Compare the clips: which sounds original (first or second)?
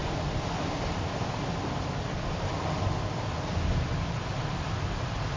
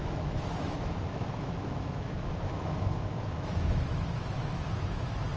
first